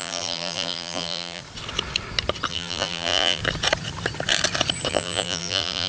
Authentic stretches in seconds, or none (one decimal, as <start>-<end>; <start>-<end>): 1.4-2.5; 3.4-4.9